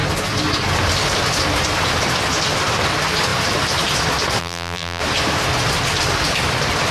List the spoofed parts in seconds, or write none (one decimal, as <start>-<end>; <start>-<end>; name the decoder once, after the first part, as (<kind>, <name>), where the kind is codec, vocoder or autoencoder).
4.4-5.0 (vocoder, BigVGAN v2)

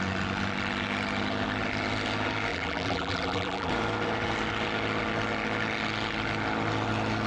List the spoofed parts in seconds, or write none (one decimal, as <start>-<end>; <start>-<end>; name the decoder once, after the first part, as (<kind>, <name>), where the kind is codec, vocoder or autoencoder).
2.5-3.7 (vocoder, BigVGAN v2)

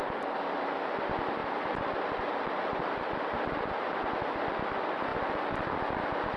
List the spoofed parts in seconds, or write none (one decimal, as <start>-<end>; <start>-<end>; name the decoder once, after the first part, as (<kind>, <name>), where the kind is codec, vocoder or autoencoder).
1.4-4.1 (vocoder, BigVGAN v2)

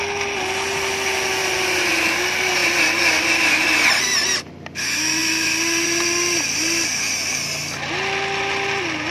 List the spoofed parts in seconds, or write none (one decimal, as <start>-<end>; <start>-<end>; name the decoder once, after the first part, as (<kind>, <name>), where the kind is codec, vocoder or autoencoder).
1.4-2.0 (vocoder, BigVGAN v2); 2.6-4.5; 5.2-9.1